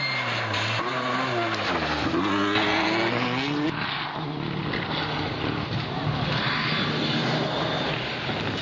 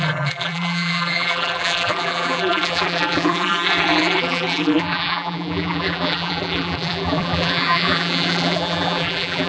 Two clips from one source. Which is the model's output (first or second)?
second